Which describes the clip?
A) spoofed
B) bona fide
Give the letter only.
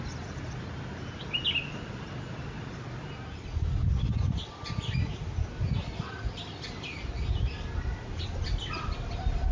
B